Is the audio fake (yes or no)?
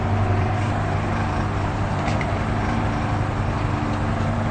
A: yes